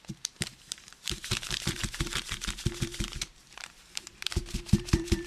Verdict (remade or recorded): remade